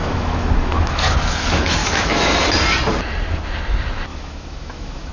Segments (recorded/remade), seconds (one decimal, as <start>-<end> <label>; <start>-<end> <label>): 0.0-1.1 remade; 1.1-1.8 recorded; 1.8-2.3 remade; 2.3-4.1 recorded; 4.1-5.1 remade